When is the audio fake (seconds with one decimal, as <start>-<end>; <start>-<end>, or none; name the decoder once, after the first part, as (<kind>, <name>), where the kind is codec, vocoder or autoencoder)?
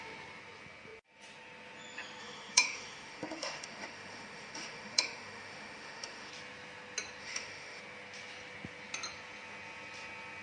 2.2-6.3 (autoencoder, DAC-VAE); 7.2-7.8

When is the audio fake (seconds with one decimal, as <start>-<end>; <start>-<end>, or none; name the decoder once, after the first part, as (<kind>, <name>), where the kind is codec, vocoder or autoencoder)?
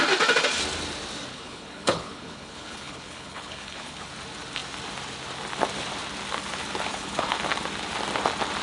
1.3-4.1 (codec, HILCodec); 6.9-7.4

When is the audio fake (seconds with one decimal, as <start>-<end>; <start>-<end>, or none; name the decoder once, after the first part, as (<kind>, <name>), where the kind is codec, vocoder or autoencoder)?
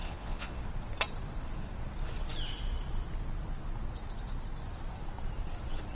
0.0-0.6 (vocoder, Vocos)